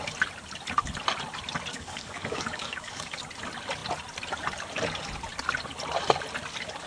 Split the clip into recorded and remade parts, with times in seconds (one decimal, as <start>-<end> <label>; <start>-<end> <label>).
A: 0.0-1.7 recorded; 1.7-3.2 remade; 3.2-6.9 recorded